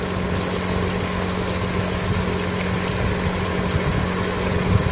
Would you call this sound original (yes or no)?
yes